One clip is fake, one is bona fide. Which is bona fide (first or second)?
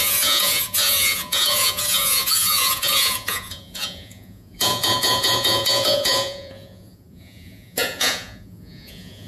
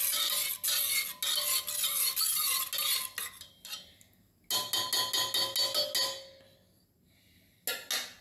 second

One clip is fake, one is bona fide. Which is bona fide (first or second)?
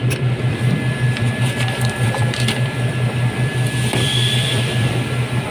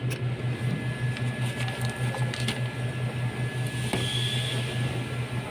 second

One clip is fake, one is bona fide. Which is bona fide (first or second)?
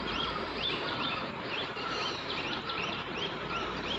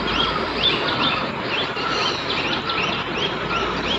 second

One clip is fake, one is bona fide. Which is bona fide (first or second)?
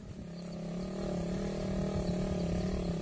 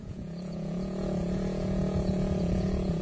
first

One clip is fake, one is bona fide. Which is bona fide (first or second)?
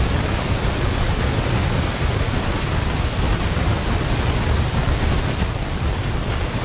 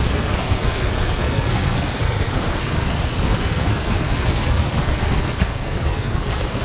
first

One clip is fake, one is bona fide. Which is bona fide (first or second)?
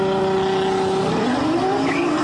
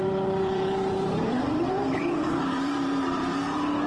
first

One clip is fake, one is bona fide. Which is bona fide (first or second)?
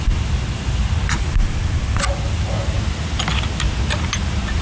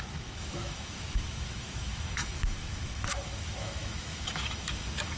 first